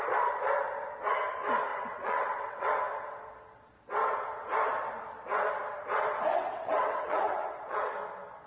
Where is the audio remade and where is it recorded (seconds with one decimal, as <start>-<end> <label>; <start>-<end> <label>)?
0.0-1.7 recorded; 1.7-2.8 remade; 2.8-6.3 recorded; 6.3-7.9 remade; 7.9-8.5 recorded